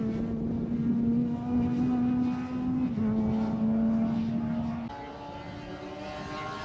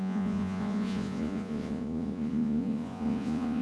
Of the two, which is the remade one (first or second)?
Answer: second